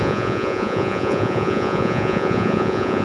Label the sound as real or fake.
fake